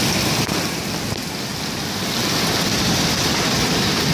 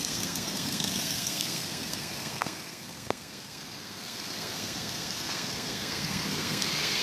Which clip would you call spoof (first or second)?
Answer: second